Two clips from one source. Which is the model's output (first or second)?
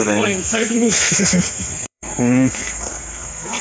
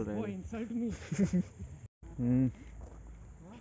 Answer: first